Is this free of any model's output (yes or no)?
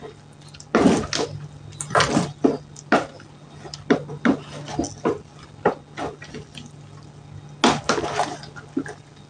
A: yes